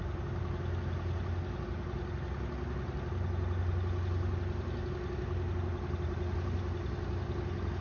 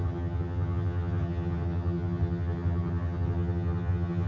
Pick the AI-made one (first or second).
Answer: second